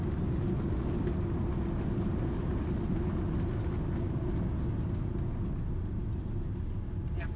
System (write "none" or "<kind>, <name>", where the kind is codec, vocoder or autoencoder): none